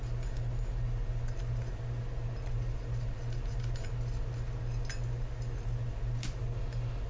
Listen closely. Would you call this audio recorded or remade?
recorded